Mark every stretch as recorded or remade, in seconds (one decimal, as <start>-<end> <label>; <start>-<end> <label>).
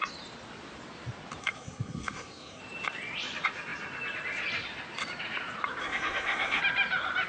0.0-1.4 recorded; 1.4-2.6 remade; 2.6-5.8 recorded; 5.8-6.6 remade; 6.6-7.3 recorded